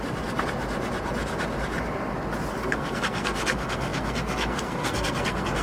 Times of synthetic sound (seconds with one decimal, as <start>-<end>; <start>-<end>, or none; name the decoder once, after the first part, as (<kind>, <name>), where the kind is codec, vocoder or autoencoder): 2.6-5.6 (codec, SNAC)